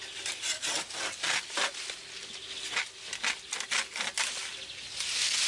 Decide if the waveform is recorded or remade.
recorded